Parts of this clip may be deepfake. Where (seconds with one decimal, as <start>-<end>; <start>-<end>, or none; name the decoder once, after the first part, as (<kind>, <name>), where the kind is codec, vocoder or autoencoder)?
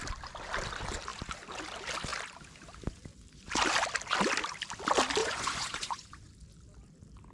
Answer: 5.2-6.2 (vocoder, Vocos)